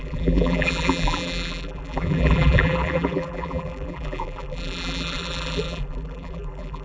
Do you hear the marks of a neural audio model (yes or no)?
yes